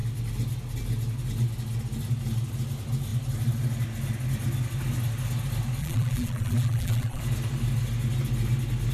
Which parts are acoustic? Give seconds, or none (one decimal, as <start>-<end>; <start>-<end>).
0.0-5.8; 7.2-8.9